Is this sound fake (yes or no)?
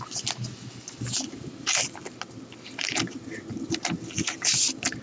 no